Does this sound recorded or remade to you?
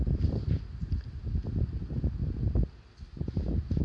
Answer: recorded